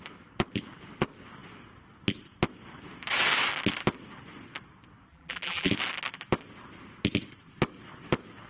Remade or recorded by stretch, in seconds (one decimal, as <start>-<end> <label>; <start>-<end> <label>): 0.0-5.1 recorded; 5.1-5.7 remade; 5.7-8.5 recorded

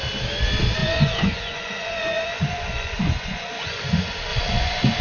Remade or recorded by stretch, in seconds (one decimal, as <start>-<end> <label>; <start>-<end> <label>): 0.0-0.8 recorded; 0.8-3.8 remade; 3.8-4.3 recorded; 4.3-5.0 remade

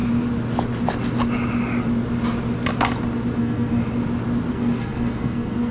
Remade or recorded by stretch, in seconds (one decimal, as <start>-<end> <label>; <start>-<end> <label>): 0.0-3.4 recorded; 3.4-3.8 remade; 3.8-4.5 recorded; 4.5-5.7 remade